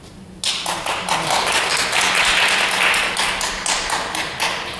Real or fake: real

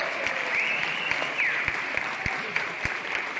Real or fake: real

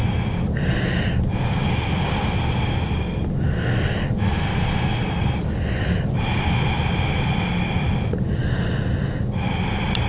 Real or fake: real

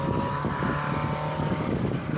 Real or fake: real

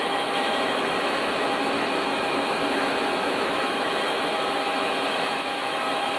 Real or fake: fake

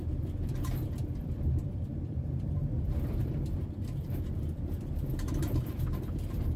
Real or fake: fake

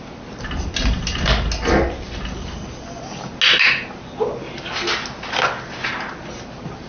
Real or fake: real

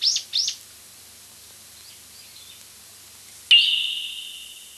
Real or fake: real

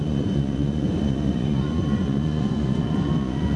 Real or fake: fake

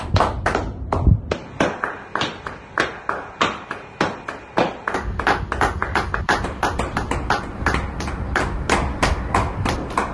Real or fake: real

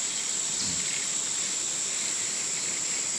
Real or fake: real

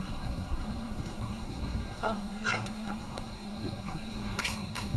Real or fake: fake